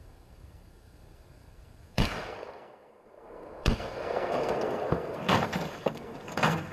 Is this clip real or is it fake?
fake